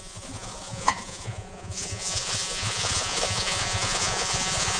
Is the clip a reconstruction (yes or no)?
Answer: yes